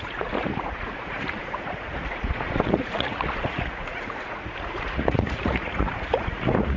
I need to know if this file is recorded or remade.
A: remade